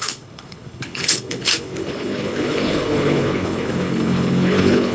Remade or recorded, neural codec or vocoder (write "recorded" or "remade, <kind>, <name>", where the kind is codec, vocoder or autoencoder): remade, codec, HILCodec